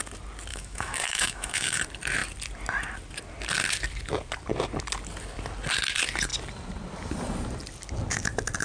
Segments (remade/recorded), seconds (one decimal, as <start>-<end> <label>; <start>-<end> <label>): 0.0-0.5 recorded; 0.5-1.8 remade; 1.8-8.6 recorded